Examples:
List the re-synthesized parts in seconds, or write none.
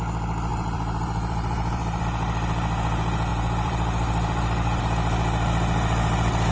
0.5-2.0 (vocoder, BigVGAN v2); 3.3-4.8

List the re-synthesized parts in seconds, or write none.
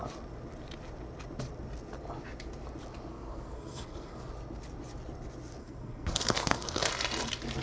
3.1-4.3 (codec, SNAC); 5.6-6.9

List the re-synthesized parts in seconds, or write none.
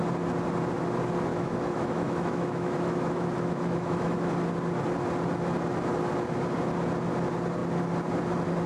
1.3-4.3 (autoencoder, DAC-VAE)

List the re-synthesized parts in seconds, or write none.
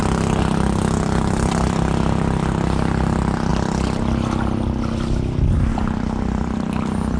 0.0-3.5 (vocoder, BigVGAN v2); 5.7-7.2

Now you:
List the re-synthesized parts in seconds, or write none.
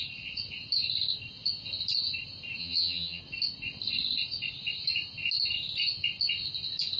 2.6-3.2 (vocoder, HiFi-GAN)